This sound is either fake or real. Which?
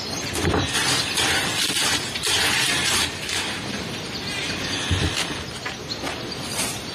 real